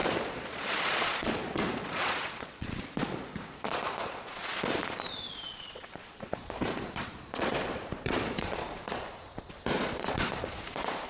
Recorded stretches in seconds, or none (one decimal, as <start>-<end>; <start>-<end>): none